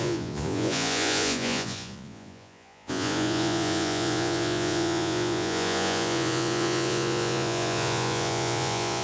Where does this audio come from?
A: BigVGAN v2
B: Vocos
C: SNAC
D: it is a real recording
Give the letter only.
B